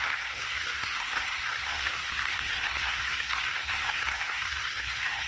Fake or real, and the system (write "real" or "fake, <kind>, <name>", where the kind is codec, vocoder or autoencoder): fake, codec, SNAC